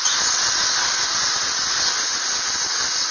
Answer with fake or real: real